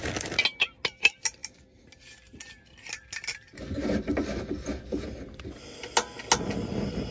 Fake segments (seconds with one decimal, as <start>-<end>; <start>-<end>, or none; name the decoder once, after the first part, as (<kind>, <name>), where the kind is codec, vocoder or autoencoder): none